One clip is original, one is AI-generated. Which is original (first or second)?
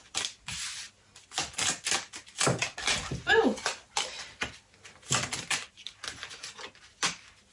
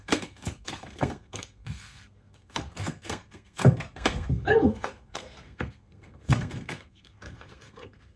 first